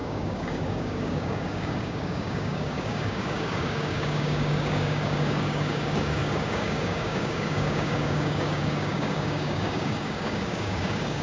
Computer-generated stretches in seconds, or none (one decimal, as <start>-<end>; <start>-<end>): 0.0-11.2